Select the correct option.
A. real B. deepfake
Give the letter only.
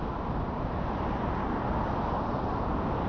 A